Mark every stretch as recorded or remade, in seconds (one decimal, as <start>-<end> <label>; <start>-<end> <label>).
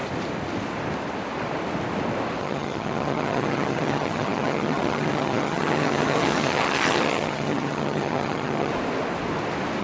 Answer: 0.0-2.4 recorded; 2.4-8.7 remade; 8.7-9.8 recorded